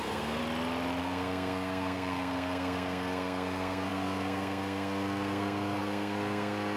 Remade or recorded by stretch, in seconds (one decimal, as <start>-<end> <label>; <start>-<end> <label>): 0.0-0.4 remade; 0.4-1.0 recorded; 1.0-6.8 remade